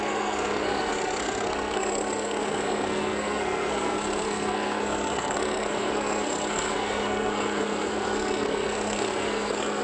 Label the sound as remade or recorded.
remade